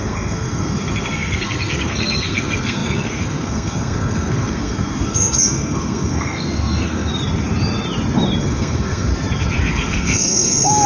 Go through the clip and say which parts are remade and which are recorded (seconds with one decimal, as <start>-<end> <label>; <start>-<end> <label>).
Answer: 0.0-7.1 remade; 7.1-8.4 recorded; 8.4-9.1 remade; 9.1-9.7 recorded; 9.7-10.9 remade